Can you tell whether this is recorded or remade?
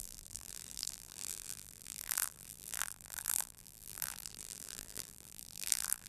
remade